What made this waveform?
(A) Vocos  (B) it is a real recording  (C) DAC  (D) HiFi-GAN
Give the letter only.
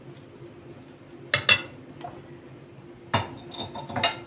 B